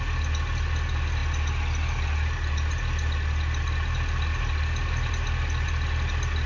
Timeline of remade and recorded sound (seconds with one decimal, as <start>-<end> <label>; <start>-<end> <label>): 0.0-6.5 recorded